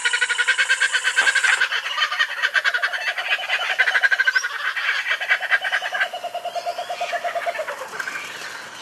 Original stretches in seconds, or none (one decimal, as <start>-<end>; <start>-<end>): 0.0-8.8